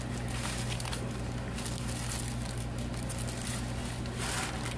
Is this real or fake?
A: real